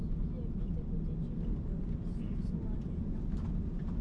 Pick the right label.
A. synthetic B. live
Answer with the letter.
B